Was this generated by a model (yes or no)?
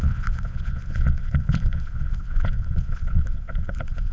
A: yes